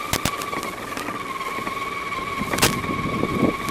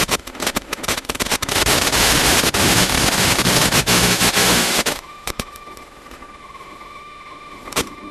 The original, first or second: first